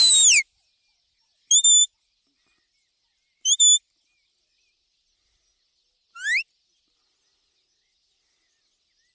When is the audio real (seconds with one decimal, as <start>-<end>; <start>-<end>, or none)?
0.0-9.1